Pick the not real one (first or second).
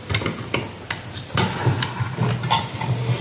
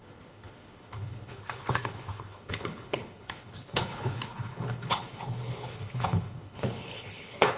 second